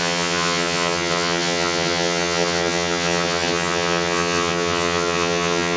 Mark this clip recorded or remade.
remade